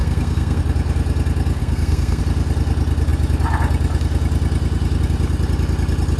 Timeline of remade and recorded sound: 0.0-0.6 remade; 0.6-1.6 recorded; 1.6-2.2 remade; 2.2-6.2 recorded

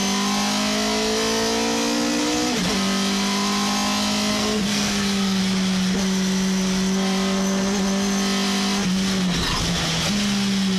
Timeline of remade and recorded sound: 0.0-4.3 recorded; 4.3-5.4 remade; 5.4-10.8 recorded

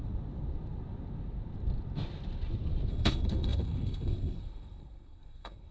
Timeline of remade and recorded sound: 0.0-2.9 recorded; 2.9-5.7 remade

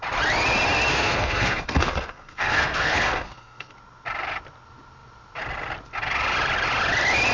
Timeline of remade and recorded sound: 0.0-0.9 recorded; 0.9-3.7 remade; 3.7-7.3 recorded

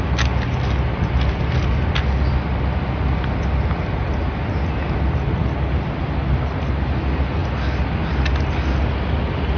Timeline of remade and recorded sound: 0.0-9.6 recorded

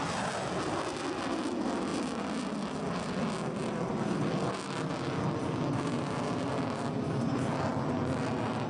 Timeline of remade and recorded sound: 0.0-8.7 recorded